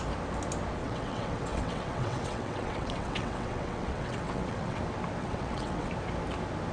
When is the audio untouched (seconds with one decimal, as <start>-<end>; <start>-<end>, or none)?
0.0-0.8; 4.8-5.2; 5.9-6.7